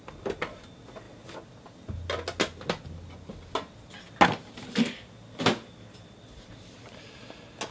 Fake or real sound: real